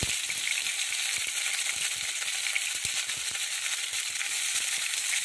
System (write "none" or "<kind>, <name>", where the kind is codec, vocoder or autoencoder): none